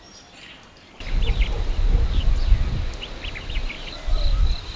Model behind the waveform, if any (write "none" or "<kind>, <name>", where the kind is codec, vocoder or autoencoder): none